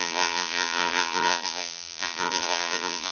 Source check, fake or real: fake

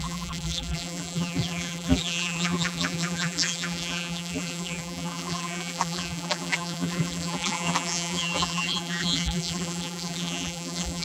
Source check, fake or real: fake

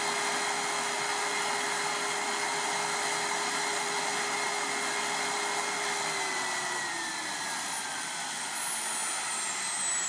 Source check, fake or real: real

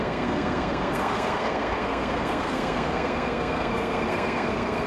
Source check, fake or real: fake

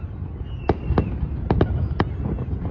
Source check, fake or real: real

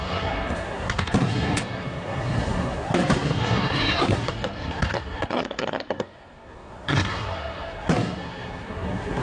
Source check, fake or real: fake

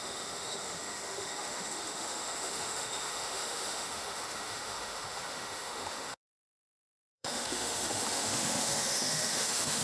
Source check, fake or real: fake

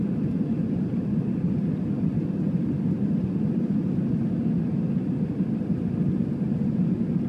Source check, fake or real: real